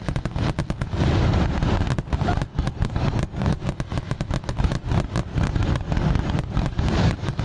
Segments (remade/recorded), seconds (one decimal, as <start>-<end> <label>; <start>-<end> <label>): 0.0-2.5 recorded; 2.5-3.6 remade; 3.6-5.3 recorded; 5.3-7.4 remade